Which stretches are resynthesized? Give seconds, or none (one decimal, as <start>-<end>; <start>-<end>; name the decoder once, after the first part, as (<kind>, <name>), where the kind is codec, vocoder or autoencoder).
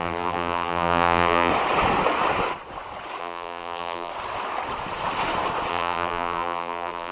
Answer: 0.0-1.5 (vocoder, BigVGAN v2); 3.2-4.1; 5.7-7.1